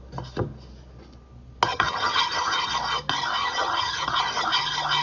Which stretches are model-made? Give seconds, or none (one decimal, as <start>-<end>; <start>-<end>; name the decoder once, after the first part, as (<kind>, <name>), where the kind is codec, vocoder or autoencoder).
1.7-2.7 (vocoder, HiFi-GAN); 3.4-4.1